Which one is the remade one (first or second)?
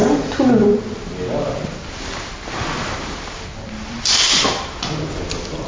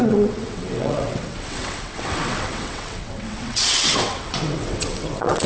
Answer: second